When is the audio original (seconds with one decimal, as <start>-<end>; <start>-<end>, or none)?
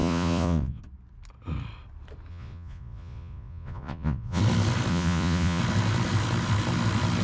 0.8-2.3; 4.4-4.9; 5.6-7.2